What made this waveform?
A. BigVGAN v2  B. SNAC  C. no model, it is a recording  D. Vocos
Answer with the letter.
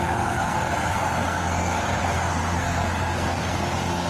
B